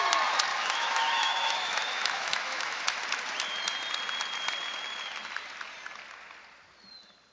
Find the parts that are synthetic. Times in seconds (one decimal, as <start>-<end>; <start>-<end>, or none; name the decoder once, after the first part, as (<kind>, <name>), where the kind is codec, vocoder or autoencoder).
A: 0.5-3.0 (autoencoder, DAC-VAE)